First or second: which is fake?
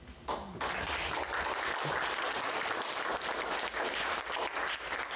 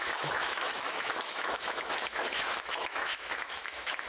second